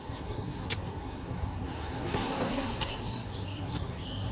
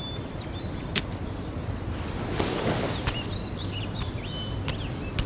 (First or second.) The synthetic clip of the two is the first